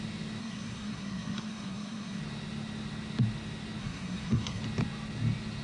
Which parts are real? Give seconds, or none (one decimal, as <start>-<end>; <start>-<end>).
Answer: 0.0-0.4; 2.2-3.8; 4.6-5.6